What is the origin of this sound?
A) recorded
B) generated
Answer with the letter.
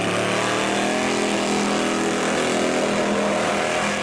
A